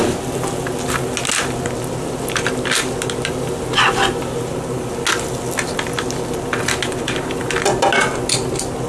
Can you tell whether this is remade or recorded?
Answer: recorded